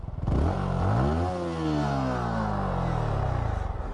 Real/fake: real